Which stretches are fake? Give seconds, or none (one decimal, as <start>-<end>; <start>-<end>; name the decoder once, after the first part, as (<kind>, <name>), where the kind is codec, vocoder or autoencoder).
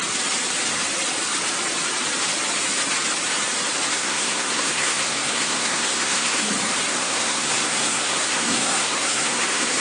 3.9-6.5 (codec, SNAC); 6.9-9.8